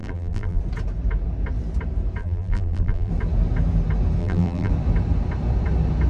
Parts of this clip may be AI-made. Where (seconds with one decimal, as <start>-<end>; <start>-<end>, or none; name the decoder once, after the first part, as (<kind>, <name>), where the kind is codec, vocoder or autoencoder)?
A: 0.0-0.6 (vocoder, BigVGAN v2); 2.2-3.1; 4.2-4.7